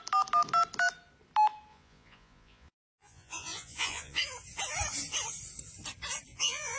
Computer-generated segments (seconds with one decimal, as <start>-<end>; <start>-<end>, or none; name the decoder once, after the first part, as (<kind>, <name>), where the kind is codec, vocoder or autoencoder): 1.7-4.2 (vocoder, Vocos); 6.3-6.8